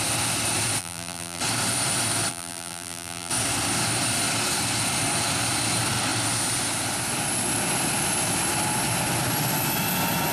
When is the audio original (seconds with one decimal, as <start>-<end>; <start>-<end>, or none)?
0.0-0.8; 1.4-2.3; 3.3-10.3